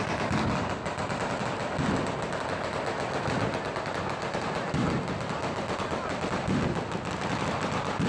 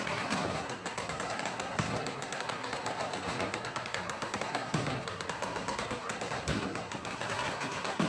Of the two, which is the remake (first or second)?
second